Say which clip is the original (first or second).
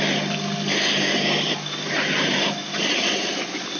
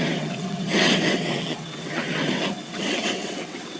first